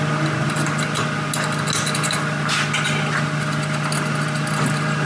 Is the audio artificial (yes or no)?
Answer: no